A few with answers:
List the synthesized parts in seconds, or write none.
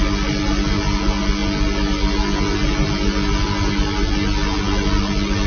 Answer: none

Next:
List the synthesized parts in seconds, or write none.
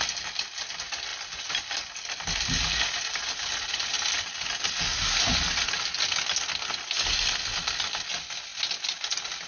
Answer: 4.9-5.4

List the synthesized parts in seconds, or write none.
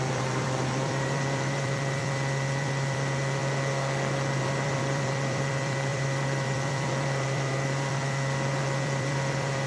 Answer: 0.0-3.4; 4.4-9.7